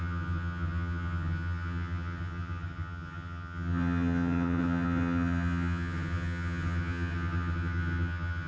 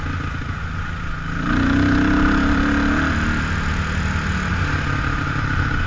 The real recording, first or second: second